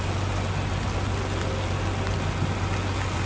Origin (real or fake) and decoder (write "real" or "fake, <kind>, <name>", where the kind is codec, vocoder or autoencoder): real